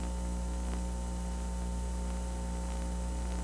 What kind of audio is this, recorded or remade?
recorded